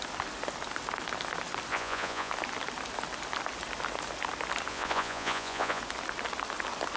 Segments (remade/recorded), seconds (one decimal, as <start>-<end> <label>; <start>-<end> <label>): 0.0-1.7 recorded; 1.7-2.3 remade; 2.3-4.7 recorded; 4.7-5.8 remade; 5.8-7.0 recorded